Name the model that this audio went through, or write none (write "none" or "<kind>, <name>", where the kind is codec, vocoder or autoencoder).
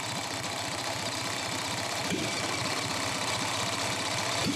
none